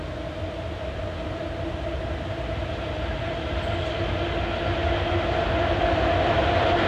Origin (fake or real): real